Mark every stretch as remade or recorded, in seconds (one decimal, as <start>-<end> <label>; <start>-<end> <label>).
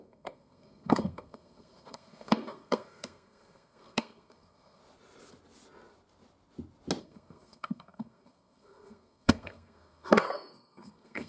0.0-4.8 remade; 4.8-7.0 recorded; 7.0-11.3 remade